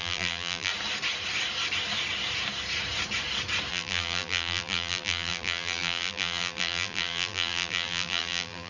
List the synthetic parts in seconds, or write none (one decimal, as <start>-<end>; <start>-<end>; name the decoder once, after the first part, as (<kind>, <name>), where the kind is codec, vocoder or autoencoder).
0.0-0.7 (vocoder, BigVGAN v2); 3.7-8.7